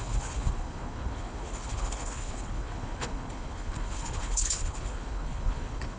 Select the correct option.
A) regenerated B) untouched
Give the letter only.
A